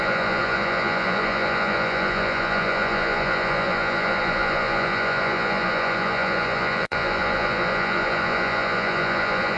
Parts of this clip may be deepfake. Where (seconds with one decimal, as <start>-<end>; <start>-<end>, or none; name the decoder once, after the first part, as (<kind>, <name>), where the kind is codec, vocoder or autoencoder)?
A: 0.0-9.6 (vocoder, Vocos)